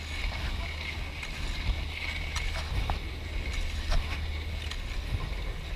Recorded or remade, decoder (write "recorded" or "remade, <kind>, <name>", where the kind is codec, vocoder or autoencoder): recorded